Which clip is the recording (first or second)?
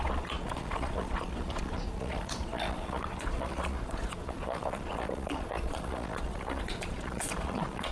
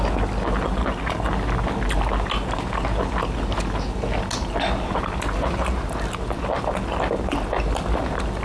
second